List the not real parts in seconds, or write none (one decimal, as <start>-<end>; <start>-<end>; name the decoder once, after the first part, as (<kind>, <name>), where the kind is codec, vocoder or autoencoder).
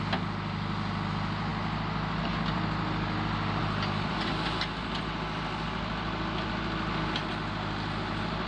none